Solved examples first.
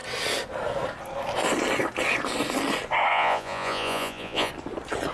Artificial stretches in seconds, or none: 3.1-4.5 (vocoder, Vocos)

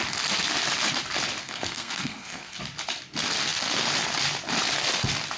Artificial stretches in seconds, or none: 1.4-2.6 (codec, SNAC)

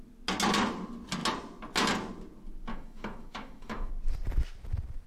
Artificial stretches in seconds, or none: 2.7-3.9 (autoencoder, DAC-VAE)

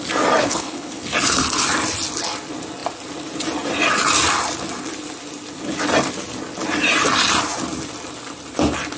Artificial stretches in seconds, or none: 0.4-1.0 (codec, HILCodec)

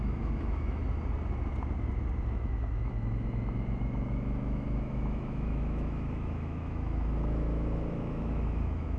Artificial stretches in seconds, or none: 0.0-0.8 (autoencoder, DAC-VAE); 2.3-9.0

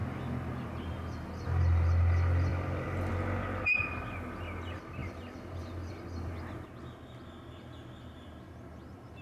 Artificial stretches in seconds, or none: none

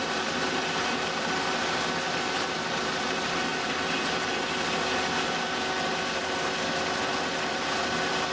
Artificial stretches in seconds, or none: none